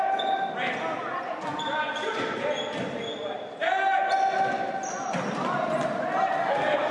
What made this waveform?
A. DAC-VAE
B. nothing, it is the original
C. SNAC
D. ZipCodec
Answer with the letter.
B